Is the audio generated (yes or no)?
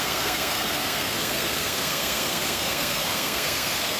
yes